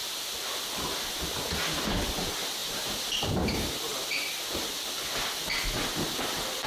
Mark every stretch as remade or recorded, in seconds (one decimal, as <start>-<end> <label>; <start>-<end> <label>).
0.0-2.6 recorded; 2.6-3.3 remade; 3.3-6.7 recorded